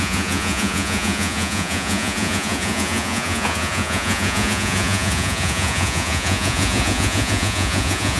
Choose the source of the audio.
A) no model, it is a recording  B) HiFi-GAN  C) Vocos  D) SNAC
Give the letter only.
C